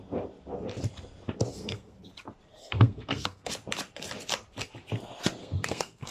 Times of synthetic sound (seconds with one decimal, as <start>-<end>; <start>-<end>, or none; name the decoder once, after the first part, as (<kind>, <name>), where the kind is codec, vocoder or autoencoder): 1.5-2.1 (codec, SNAC); 2.6-3.5; 5.4-6.1